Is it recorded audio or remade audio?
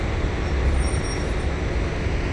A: remade